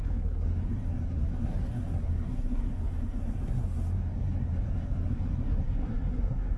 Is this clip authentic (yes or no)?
no